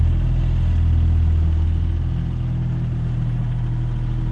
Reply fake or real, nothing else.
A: real